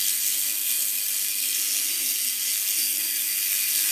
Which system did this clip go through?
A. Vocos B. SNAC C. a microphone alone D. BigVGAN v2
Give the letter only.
B